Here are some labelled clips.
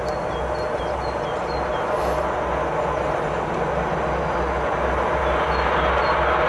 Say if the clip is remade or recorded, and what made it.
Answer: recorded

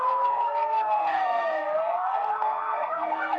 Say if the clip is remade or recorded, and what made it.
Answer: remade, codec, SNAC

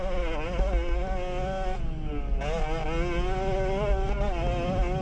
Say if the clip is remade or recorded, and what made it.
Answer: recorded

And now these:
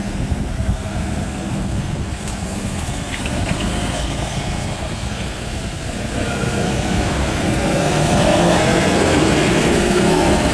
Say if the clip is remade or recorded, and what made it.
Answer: remade, codec, SNAC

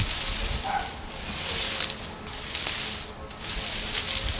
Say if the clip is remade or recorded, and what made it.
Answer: recorded